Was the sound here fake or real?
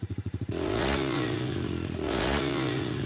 fake